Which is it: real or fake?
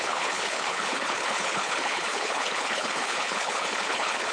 fake